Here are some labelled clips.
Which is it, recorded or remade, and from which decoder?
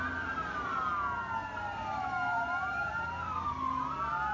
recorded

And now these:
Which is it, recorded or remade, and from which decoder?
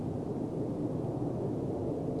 recorded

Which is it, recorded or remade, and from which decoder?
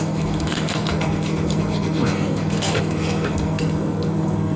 remade, codec, SNAC